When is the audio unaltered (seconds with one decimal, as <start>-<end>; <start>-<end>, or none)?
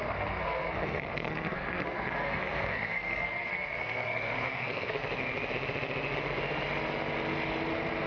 5.0-8.1